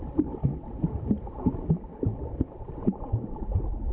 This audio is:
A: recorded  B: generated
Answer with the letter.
A